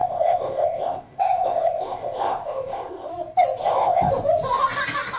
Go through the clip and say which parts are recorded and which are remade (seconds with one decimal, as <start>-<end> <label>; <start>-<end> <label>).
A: 0.0-3.1 remade; 3.1-3.6 recorded; 3.6-4.1 remade; 4.1-5.2 recorded